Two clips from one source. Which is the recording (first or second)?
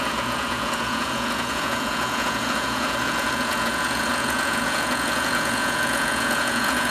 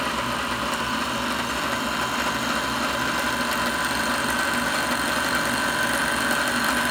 second